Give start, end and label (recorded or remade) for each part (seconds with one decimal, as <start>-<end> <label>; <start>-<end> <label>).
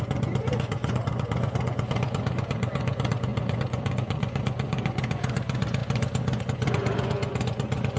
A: 0.0-8.0 remade